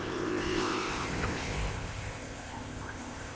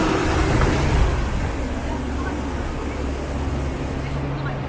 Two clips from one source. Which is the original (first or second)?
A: second